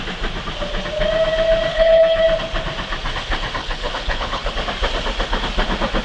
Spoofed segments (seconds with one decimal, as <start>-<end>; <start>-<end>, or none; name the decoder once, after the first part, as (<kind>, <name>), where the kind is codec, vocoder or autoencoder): 1.7-2.2 (codec, HILCodec); 3.6-4.5